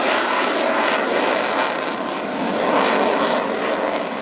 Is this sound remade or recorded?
recorded